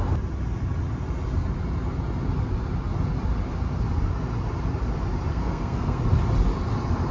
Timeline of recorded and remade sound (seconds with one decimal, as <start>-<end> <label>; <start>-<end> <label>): 0.0-5.3 recorded; 5.3-6.0 remade; 6.0-7.1 recorded